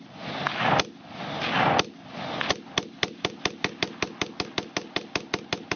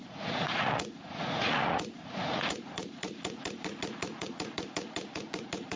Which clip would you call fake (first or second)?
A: second